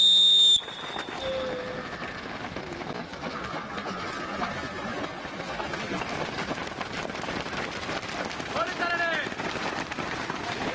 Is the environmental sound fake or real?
real